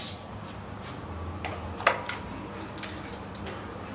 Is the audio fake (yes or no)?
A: no